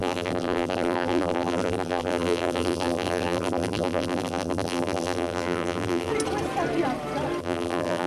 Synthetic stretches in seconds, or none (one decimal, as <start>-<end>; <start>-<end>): 0.0-6.1; 7.4-8.1